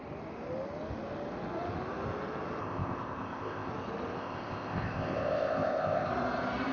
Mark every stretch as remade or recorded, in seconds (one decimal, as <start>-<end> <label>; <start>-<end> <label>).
0.0-2.6 recorded; 2.6-3.7 remade; 3.7-4.2 recorded; 4.2-6.1 remade; 6.1-6.7 recorded